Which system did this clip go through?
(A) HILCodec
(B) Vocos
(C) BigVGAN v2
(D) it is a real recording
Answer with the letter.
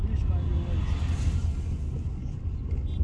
D